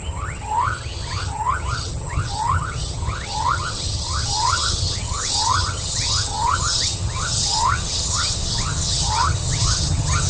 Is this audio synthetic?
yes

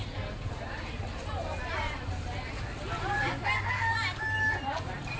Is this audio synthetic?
no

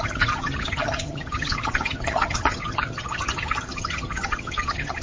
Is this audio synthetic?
yes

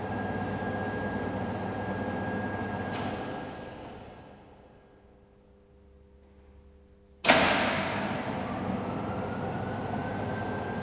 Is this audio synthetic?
no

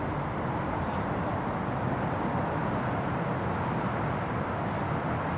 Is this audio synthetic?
no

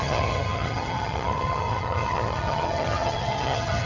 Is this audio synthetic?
yes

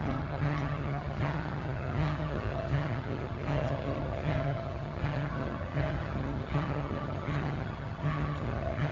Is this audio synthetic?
yes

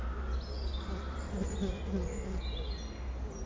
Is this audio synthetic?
no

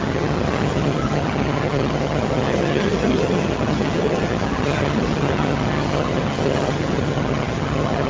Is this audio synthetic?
yes